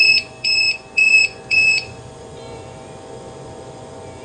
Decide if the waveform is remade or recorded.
remade